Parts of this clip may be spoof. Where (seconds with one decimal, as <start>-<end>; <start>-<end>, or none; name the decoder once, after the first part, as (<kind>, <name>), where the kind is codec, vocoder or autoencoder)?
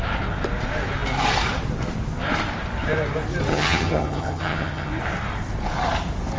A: 3.5-4.9 (vocoder, HiFi-GAN)